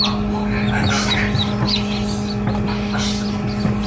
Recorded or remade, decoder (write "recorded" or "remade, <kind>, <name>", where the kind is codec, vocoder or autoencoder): recorded